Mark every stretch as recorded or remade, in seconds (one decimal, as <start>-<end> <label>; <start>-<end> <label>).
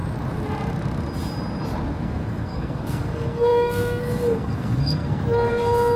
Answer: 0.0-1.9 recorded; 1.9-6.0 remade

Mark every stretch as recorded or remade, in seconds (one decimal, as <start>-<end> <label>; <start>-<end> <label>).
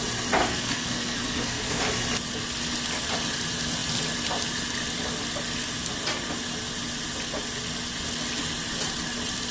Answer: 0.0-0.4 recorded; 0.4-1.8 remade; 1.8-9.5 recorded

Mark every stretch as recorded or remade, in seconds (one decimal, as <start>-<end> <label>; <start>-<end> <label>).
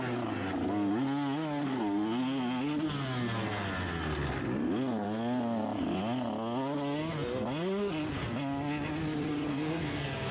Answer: 0.0-9.5 recorded; 9.5-10.3 remade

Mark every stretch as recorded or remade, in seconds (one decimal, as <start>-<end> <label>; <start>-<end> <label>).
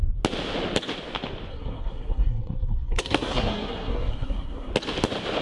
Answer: 0.0-1.5 recorded; 1.5-4.7 remade; 4.7-5.4 recorded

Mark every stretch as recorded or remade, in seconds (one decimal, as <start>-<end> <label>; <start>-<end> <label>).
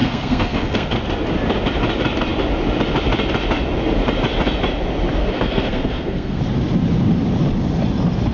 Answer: 0.0-1.0 remade; 1.0-5.2 recorded; 5.2-6.4 remade; 6.4-8.3 recorded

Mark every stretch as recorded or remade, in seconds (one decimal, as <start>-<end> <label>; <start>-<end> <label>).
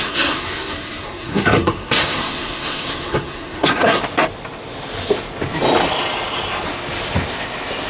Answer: 0.0-4.0 remade; 4.0-7.9 recorded